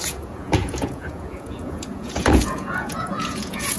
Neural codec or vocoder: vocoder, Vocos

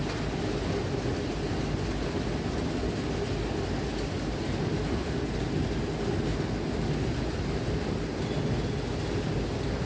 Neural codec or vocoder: none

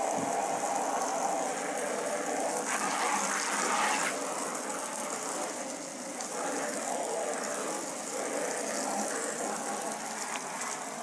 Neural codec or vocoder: none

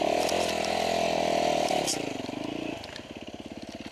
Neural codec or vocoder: none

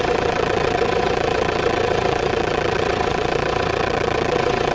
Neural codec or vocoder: vocoder, WaveNeXt